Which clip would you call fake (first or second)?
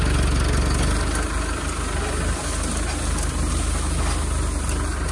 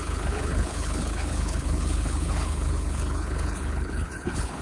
second